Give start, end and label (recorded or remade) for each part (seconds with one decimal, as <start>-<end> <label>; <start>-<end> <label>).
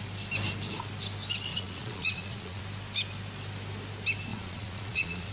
0.0-1.5 recorded; 1.5-2.6 remade; 2.6-4.3 recorded; 4.3-5.3 remade